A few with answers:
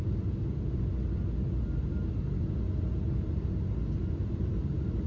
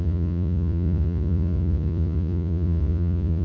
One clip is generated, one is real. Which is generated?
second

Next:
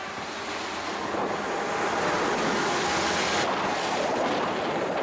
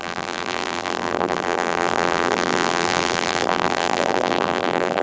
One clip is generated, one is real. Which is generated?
second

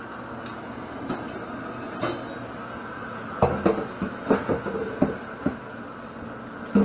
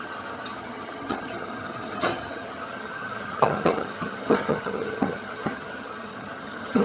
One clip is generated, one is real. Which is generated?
second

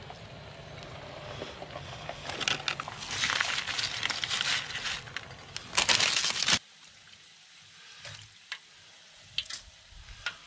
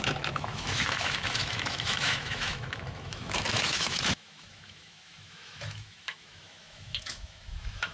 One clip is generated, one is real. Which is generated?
second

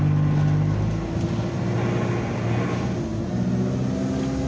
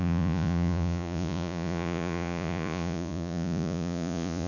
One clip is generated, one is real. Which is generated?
second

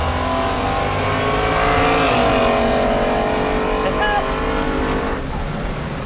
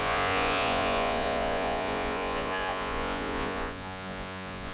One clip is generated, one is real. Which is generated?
second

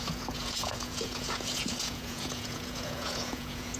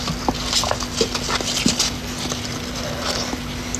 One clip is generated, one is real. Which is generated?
first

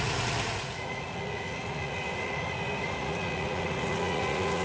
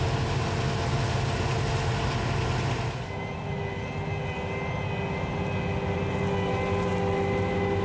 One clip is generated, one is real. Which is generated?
first